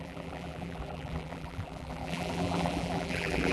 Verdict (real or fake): fake